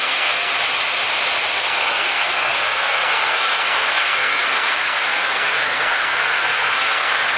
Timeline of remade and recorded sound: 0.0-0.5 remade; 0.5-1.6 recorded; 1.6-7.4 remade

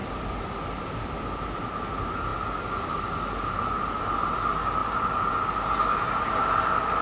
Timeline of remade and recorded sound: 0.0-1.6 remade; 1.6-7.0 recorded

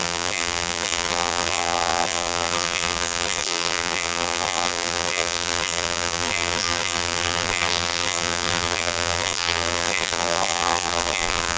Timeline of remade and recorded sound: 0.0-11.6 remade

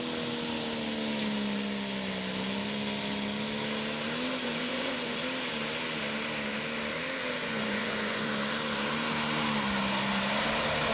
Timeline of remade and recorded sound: 0.0-4.4 recorded; 4.4-5.2 remade; 5.2-7.4 recorded; 7.4-8.3 remade; 8.3-10.9 recorded